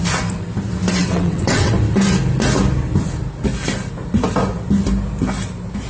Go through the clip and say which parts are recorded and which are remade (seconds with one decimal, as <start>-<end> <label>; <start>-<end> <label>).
0.0-1.0 recorded; 1.0-1.7 remade; 1.7-5.9 recorded